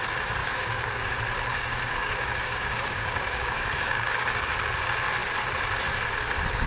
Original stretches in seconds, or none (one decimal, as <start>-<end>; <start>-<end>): 0.0-0.4; 1.1-1.5; 4.5-6.7